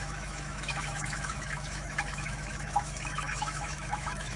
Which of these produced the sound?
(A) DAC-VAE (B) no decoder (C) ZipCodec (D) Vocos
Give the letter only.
A